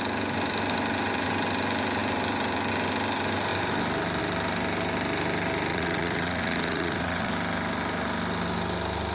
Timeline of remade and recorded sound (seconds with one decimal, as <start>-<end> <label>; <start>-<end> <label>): 0.0-5.7 recorded; 5.7-7.3 remade; 7.3-9.1 recorded